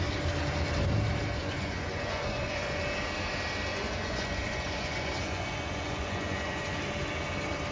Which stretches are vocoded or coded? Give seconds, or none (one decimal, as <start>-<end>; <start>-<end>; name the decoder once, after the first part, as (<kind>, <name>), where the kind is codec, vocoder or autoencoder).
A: 1.4-2.8 (vocoder, Vocos); 3.7-6.8